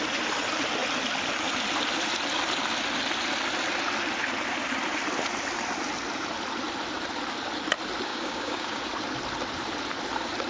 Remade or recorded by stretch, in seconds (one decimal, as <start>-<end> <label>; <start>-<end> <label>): 0.0-8.1 recorded; 8.1-8.8 remade; 8.8-10.5 recorded